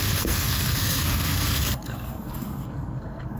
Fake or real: fake